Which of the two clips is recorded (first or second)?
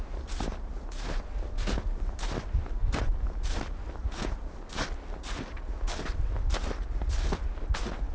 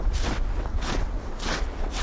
first